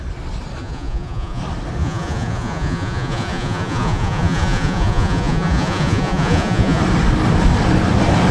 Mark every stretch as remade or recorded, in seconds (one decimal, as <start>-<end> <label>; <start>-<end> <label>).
0.0-0.6 recorded; 0.6-1.4 remade; 1.4-1.8 recorded; 1.8-6.8 remade; 6.8-8.3 recorded